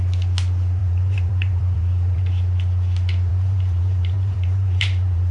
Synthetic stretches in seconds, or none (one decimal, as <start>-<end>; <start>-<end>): 0.8-2.2; 3.3-5.3